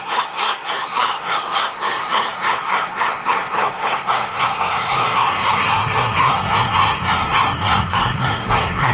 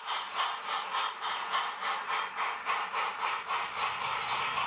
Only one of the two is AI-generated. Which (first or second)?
first